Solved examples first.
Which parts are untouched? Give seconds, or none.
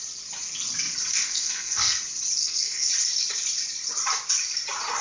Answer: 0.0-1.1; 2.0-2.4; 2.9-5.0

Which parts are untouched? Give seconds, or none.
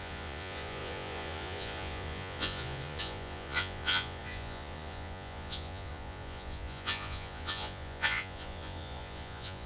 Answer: none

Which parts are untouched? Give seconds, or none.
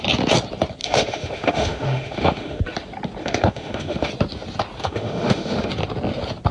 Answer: 0.0-0.8; 2.6-3.2; 4.1-4.8; 5.7-6.5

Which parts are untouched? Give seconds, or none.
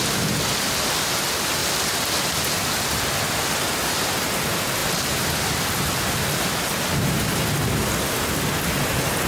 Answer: 0.0-1.6; 2.4-4.8; 6.4-9.3